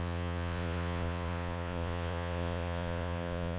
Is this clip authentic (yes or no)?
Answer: no